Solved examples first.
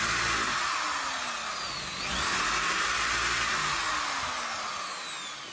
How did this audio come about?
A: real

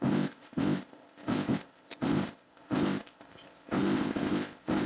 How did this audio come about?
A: fake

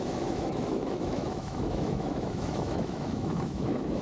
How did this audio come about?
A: fake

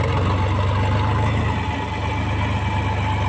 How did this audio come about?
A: real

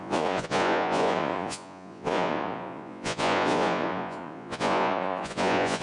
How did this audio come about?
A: fake